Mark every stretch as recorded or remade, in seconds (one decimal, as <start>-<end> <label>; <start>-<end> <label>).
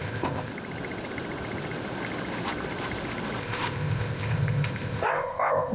0.0-0.5 remade; 0.5-3.4 recorded; 3.4-5.7 remade